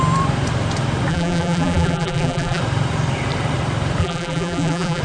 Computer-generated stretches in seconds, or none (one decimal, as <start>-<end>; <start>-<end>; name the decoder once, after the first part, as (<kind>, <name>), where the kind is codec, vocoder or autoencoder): 1.1-2.6 (vocoder, BigVGAN v2); 4.0-5.0